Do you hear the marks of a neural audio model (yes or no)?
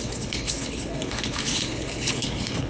yes